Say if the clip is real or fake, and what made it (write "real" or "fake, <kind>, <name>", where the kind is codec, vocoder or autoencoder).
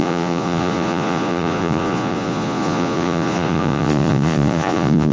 fake, vocoder, Vocos